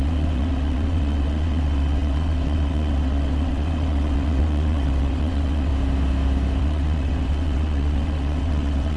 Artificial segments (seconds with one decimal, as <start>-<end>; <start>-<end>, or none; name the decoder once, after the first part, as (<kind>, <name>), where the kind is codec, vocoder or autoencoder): 0.0-5.7 (vocoder, WaveNeXt); 6.6-9.0